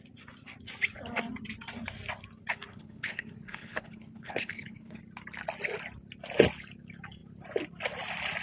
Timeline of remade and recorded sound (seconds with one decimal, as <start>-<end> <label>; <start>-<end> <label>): 0.0-2.7 recorded; 2.7-5.0 remade; 5.0-8.4 recorded